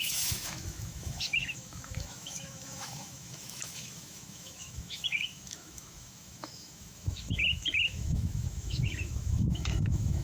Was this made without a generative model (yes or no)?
no